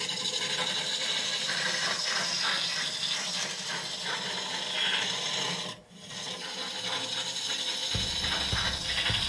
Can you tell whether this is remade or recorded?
recorded